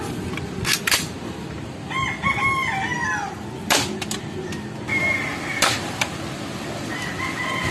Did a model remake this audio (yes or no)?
no